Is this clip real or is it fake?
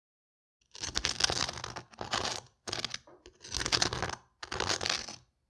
real